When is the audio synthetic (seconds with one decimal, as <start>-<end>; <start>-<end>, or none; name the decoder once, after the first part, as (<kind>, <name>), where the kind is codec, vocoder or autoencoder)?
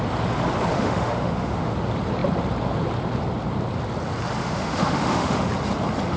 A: 0.7-1.7 (autoencoder, DAC-VAE); 4.4-5.5